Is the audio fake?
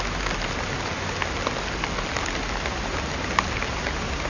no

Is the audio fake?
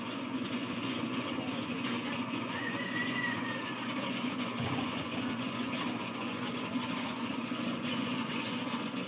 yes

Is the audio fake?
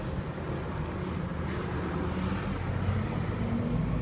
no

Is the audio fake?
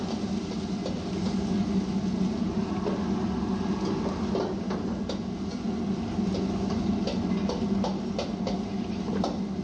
no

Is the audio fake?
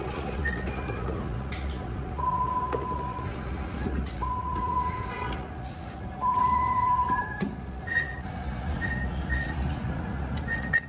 yes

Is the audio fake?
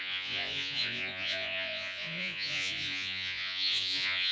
yes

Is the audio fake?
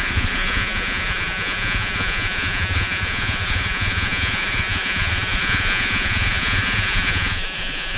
yes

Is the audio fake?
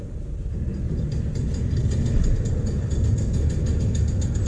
no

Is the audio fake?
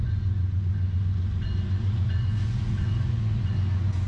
yes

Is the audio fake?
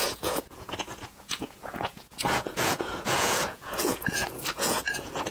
yes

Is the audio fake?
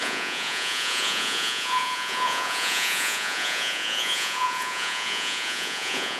yes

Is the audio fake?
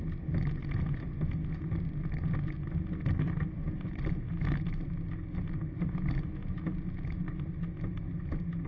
no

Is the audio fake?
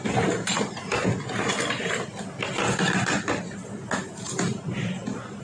no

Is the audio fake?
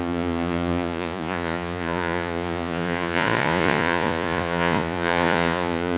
yes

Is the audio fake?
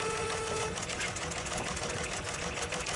yes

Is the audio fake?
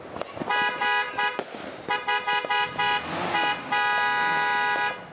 no